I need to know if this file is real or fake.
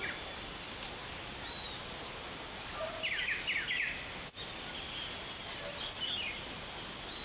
real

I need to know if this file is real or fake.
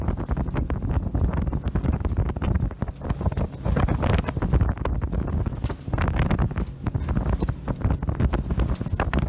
real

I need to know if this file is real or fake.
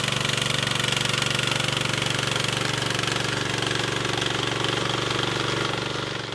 real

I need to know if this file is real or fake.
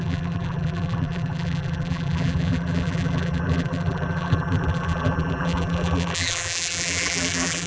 fake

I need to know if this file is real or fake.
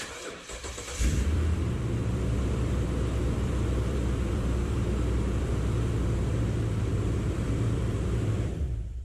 fake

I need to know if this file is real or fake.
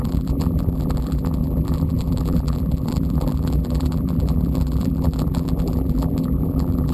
fake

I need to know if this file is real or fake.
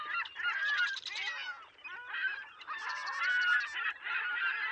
fake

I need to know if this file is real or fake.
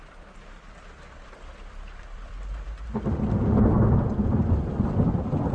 fake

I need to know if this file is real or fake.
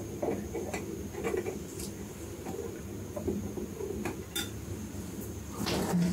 real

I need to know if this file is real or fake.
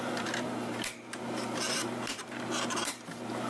fake